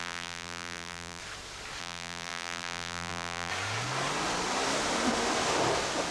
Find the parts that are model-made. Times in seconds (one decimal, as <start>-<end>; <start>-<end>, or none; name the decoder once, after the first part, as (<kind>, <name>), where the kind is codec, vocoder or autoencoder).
0.0-1.2 (vocoder, BigVGAN v2); 1.8-3.5